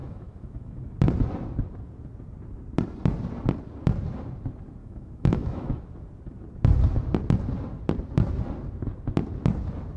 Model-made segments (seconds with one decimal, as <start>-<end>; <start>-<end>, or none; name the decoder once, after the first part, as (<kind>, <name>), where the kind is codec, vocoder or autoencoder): 0.0-0.9 (autoencoder, DAC-VAE); 4.8-5.8